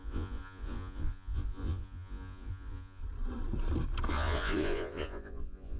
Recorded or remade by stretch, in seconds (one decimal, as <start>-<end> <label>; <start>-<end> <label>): 0.0-3.0 remade; 3.0-4.1 recorded; 4.1-5.8 remade